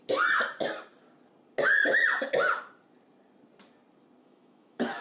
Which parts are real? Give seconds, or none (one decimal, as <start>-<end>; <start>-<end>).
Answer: 0.0-4.2